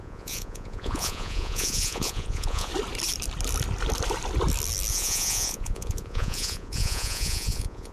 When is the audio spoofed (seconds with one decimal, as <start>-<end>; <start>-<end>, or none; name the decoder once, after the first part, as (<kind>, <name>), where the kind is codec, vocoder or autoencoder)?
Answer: 0.0-2.7 (vocoder, Vocos); 4.9-7.9